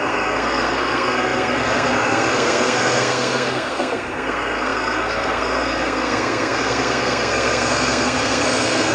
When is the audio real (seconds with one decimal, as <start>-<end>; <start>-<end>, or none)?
none